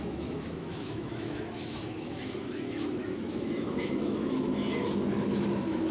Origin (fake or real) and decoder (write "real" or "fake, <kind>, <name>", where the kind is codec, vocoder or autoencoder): fake, autoencoder, DAC-VAE